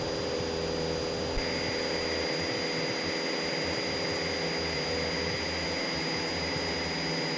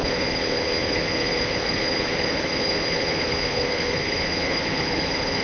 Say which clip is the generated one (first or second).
second